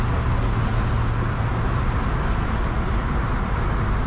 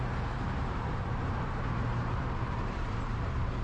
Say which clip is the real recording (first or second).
first